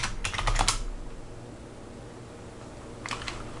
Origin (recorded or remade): recorded